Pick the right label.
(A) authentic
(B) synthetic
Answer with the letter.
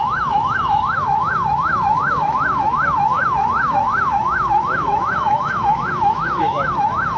B